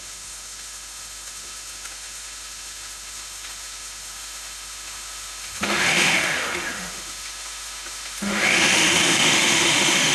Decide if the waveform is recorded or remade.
remade